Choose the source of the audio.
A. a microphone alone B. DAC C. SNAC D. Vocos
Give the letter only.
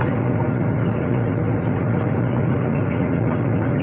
D